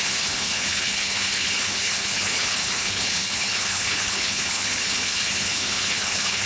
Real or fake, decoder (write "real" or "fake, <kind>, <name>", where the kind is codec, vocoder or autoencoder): fake, codec, HILCodec